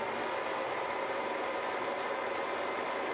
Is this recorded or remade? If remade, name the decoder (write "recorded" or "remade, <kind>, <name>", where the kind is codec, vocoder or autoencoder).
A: recorded